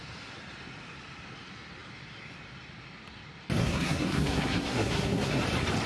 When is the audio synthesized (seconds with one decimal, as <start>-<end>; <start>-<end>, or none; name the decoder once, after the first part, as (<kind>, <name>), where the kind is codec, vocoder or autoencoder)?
3.6-5.4 (codec, SNAC)